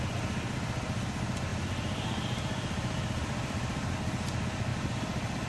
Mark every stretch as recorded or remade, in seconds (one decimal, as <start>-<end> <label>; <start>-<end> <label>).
0.0-1.5 recorded; 1.5-3.9 remade; 3.9-4.7 recorded; 4.7-5.5 remade

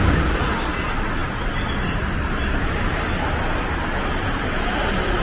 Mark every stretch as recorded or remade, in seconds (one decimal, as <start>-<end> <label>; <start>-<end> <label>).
0.0-5.2 recorded

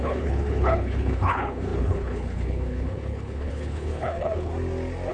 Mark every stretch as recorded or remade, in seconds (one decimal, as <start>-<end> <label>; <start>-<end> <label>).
0.0-4.5 remade; 4.5-5.1 recorded

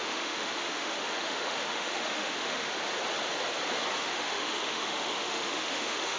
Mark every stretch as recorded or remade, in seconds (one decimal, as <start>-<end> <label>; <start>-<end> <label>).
0.0-2.7 remade; 2.7-4.0 recorded; 4.0-6.2 remade

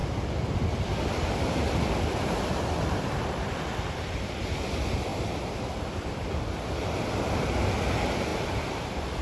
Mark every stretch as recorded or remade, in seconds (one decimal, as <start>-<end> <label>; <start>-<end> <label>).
0.0-4.1 remade; 4.1-5.1 recorded; 5.1-7.1 remade; 7.1-9.2 recorded

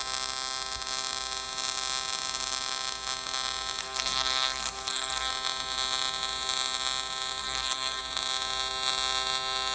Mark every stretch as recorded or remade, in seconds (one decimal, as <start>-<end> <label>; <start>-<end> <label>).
0.0-3.8 recorded; 3.8-5.3 remade; 5.3-7.4 recorded; 7.4-8.0 remade; 8.0-9.7 recorded